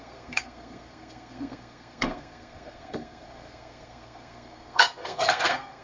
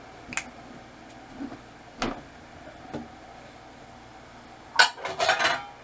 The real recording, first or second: second